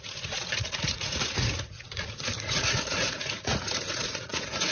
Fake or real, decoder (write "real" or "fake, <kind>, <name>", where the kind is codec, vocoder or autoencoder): fake, vocoder, Vocos